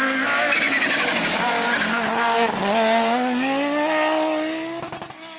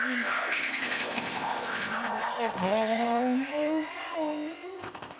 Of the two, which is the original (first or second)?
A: first